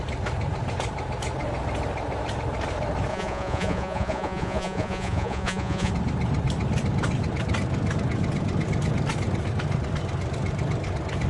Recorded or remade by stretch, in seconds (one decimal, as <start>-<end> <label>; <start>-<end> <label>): 0.0-3.1 recorded; 3.1-5.9 remade; 5.9-11.3 recorded